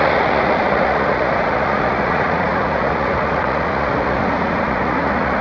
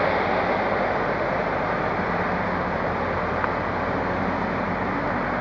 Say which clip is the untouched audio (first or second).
second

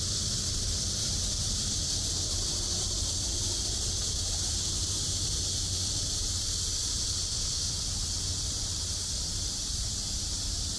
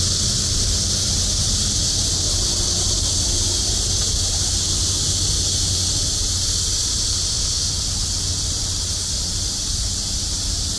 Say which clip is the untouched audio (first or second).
second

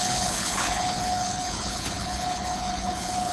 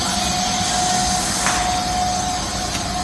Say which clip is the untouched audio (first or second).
second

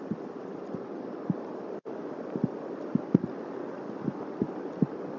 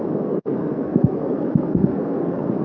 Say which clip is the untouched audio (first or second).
first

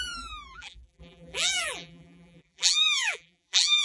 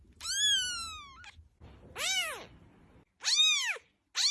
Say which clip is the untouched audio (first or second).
second